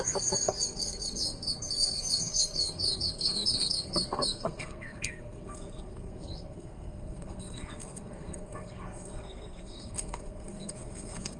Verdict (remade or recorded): remade